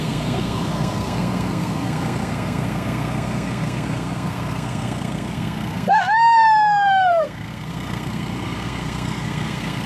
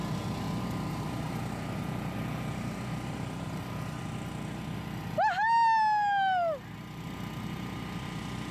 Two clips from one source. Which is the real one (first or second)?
second